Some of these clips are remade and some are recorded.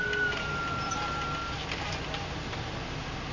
recorded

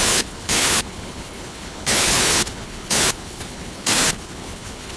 remade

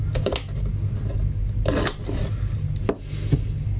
recorded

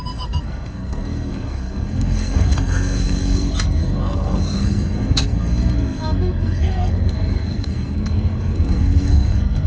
remade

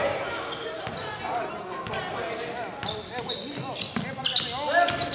recorded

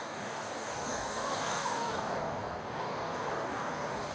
remade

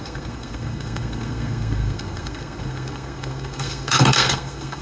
remade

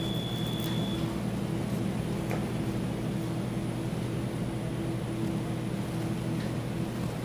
recorded